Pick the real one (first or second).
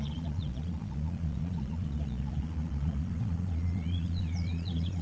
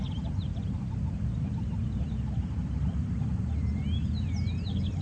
second